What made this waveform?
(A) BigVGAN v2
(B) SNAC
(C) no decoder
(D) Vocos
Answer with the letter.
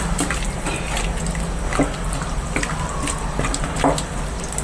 C